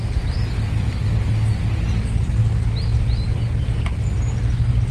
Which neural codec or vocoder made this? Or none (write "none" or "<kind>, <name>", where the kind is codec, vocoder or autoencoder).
none